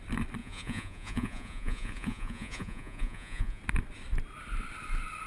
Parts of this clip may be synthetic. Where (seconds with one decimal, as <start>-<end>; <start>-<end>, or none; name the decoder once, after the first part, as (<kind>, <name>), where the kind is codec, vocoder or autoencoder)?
0.4-3.6 (vocoder, Vocos)